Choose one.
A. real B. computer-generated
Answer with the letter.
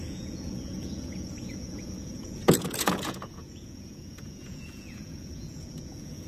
B